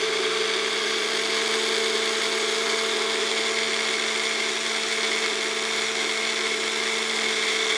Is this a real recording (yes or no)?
yes